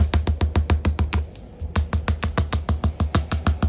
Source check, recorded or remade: recorded